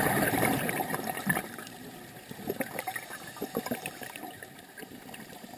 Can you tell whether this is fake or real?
fake